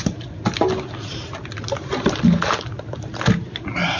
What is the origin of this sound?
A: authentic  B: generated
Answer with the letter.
A